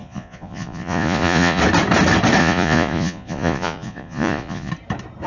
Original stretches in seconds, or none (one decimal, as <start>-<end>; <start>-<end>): 1.6-2.4; 4.7-5.3